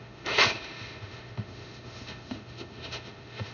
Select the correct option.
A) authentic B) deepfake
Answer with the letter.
B